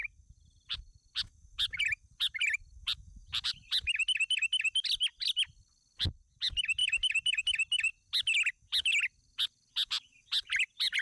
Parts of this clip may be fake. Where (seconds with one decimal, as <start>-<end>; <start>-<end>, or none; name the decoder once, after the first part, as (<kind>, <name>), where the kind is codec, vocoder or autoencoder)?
6.8-7.4 (vocoder, BigVGAN v2)